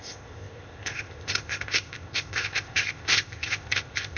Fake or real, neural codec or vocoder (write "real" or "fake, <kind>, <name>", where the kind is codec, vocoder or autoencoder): fake, codec, ZipCodec